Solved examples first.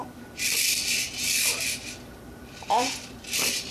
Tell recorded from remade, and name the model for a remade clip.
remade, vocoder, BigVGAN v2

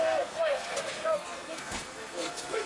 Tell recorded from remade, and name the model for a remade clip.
remade, codec, SNAC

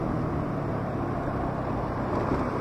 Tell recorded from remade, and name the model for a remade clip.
recorded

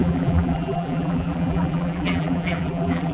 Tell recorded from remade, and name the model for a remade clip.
remade, vocoder, BigVGAN v2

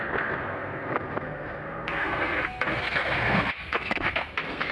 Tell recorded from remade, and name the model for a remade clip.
remade, codec, SNAC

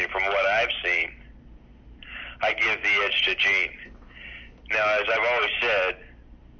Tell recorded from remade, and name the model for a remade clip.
recorded